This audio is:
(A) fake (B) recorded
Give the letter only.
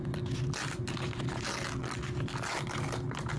B